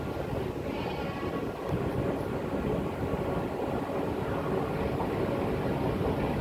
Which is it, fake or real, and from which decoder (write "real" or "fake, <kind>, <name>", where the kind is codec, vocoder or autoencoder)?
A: real